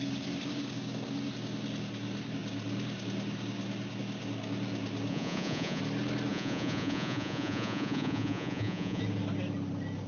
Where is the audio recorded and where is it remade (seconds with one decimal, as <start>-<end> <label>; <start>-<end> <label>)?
0.0-5.1 recorded; 5.1-5.8 remade; 5.8-6.3 recorded; 6.3-9.0 remade; 9.0-10.1 recorded